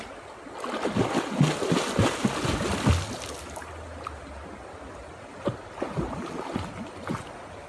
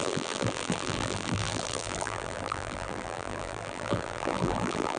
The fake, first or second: second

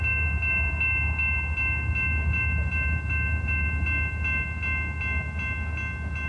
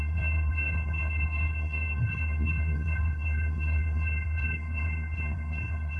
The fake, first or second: second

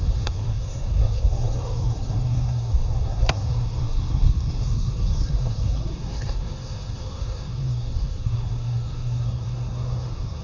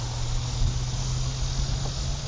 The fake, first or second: first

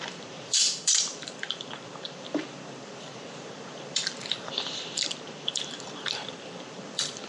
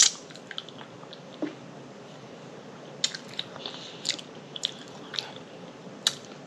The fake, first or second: first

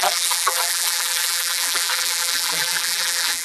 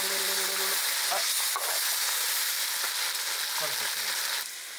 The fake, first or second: first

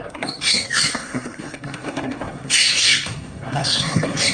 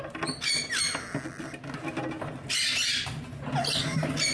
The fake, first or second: first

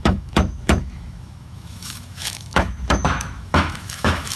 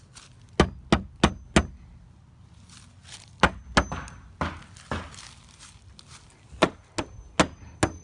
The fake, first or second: first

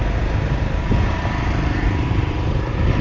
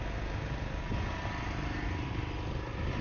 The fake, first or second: first